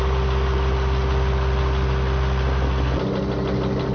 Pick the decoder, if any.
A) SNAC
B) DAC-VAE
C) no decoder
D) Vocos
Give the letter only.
C